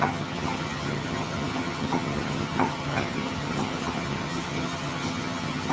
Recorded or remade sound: remade